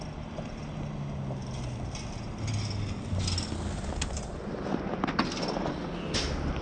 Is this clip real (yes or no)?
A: yes